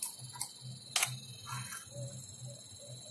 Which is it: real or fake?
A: real